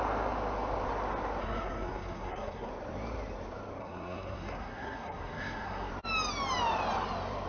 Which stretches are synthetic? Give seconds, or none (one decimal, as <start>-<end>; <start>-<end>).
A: 1.4-2.7; 3.8-5.9